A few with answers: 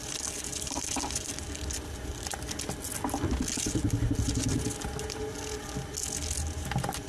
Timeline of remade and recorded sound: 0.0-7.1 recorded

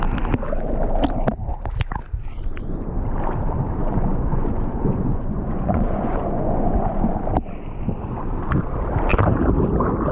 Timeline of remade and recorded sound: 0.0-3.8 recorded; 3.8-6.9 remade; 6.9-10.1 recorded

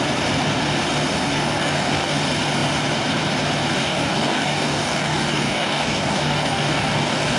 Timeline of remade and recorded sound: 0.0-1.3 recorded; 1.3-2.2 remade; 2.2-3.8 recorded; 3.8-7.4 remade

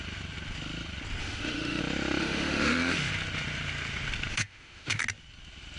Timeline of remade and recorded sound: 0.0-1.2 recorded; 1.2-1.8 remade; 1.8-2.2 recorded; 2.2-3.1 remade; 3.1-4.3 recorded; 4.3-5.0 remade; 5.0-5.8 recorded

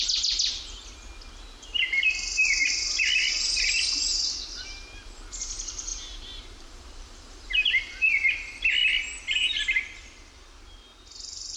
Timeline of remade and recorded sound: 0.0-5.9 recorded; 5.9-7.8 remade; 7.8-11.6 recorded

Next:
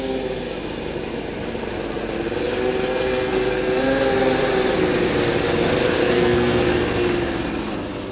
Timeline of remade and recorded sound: 0.0-2.9 recorded; 2.9-3.8 remade; 3.8-6.0 recorded; 6.0-6.7 remade; 6.7-8.1 recorded